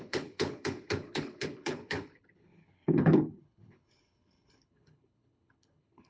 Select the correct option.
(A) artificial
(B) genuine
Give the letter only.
A